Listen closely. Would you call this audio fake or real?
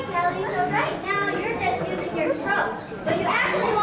real